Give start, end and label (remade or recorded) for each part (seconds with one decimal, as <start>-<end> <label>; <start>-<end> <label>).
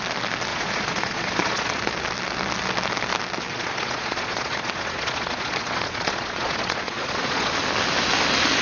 0.0-0.5 recorded; 0.5-1.8 remade; 1.8-3.5 recorded; 3.5-7.6 remade; 7.6-8.6 recorded